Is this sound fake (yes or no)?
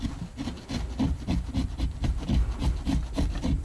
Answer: no